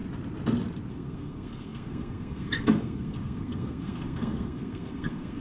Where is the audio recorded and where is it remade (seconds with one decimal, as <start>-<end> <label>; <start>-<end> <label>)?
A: 0.0-0.9 recorded; 0.9-5.4 remade

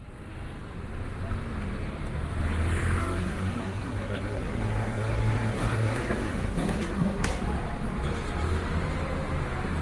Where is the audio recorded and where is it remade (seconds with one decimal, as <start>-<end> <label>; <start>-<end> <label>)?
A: 0.0-3.0 recorded; 3.0-7.4 remade; 7.4-9.8 recorded

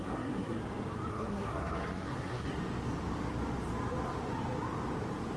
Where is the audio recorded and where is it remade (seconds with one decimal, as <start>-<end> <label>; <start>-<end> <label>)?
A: 0.0-0.6 remade; 0.6-1.1 recorded; 1.1-2.6 remade; 2.6-5.4 recorded

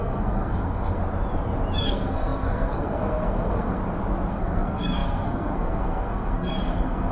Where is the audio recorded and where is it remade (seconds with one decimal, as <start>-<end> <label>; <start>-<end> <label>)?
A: 0.0-1.0 remade; 1.0-1.8 recorded; 1.8-3.8 remade; 3.8-4.3 recorded; 4.3-7.1 remade

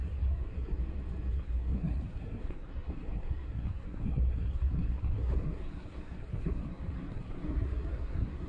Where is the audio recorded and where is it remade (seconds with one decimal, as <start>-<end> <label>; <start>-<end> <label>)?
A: 0.0-0.8 remade; 0.8-1.3 recorded; 1.3-8.5 remade

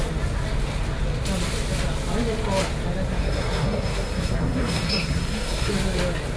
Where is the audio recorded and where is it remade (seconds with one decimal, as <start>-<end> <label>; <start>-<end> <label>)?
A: 0.0-3.2 recorded; 3.2-5.7 remade; 5.7-6.4 recorded

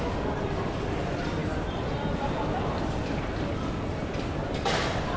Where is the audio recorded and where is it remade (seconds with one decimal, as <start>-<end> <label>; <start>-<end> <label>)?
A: 0.0-5.2 recorded

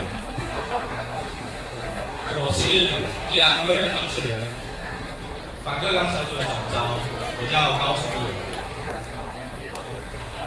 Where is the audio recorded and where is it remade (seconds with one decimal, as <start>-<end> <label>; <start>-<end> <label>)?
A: 0.0-5.4 remade; 5.4-8.6 recorded; 8.6-10.5 remade